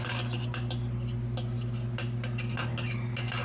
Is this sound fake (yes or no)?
no